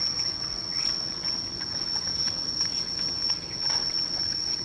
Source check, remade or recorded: remade